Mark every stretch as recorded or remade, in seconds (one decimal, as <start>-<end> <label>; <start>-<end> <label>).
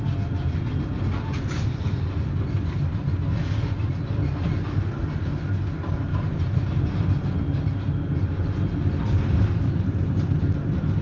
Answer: 0.0-6.1 recorded; 6.1-6.9 remade; 6.9-11.0 recorded